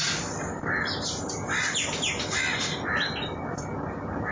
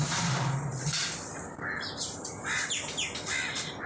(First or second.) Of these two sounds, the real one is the first